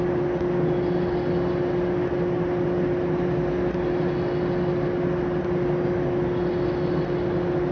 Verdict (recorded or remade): recorded